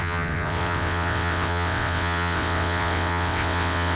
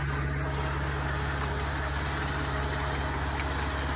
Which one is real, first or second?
second